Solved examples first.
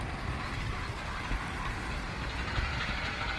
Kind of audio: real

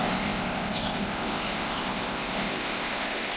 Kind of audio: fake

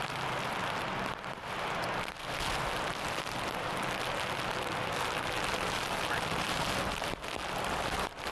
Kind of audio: fake